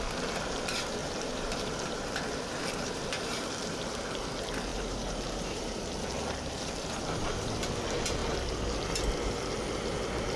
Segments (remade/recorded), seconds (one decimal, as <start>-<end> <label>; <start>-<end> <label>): 0.0-1.0 recorded; 1.0-3.1 remade; 3.1-4.7 recorded; 4.7-5.8 remade; 5.8-10.4 recorded